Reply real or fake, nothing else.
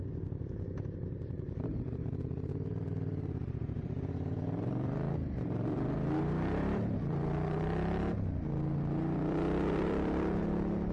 fake